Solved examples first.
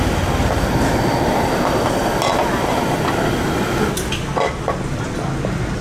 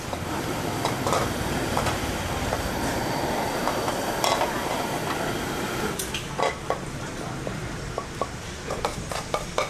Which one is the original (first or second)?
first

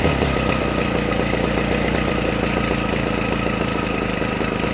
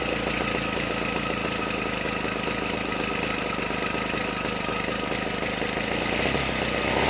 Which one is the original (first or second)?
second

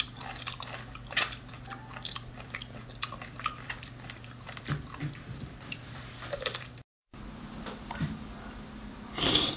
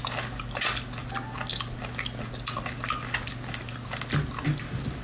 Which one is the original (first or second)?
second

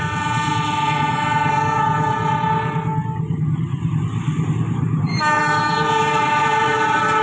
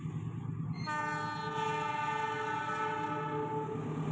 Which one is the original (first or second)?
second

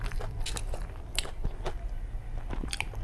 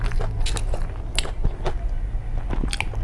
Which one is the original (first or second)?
second